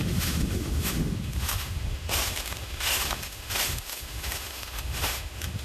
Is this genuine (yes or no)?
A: no